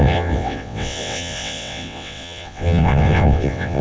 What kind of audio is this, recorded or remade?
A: remade